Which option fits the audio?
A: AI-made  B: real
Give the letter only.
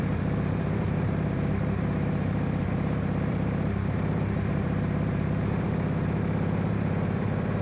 A